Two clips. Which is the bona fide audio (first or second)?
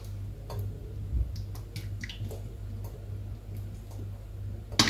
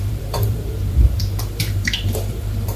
first